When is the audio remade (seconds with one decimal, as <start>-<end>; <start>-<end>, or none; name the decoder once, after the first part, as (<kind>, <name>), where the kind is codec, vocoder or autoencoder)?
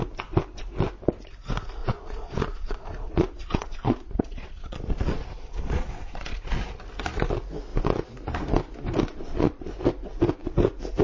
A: 1.8-6.5 (vocoder, Vocos); 9.1-9.7